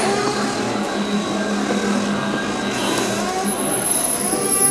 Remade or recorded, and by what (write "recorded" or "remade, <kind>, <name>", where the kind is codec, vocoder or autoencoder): recorded